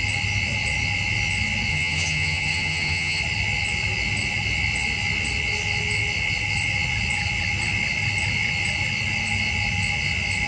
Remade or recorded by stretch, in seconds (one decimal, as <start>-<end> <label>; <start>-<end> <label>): 0.0-1.7 recorded; 1.7-3.2 remade; 3.2-10.5 recorded